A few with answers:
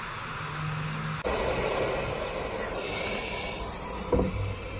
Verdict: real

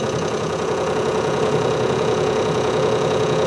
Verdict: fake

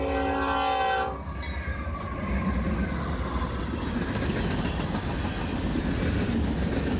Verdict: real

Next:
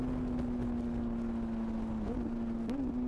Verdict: real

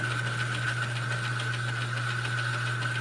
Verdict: real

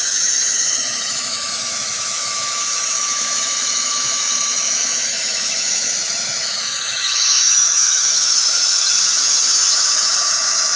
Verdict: fake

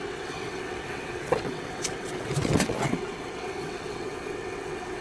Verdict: fake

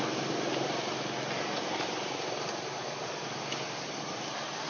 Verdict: real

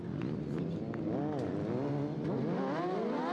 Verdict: real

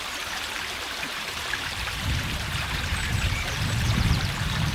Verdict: fake